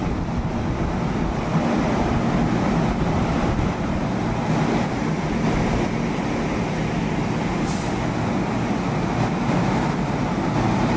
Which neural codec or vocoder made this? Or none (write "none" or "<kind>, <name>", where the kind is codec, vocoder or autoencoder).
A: none